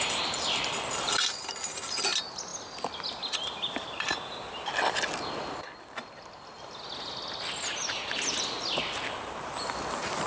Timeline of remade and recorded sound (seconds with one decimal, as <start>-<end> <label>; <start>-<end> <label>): 0.0-10.3 recorded